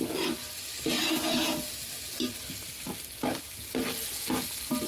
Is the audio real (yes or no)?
yes